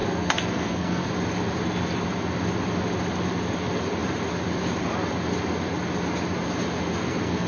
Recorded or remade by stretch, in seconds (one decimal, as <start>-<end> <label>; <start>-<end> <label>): 0.0-1.1 remade; 1.1-7.0 recorded; 7.0-7.5 remade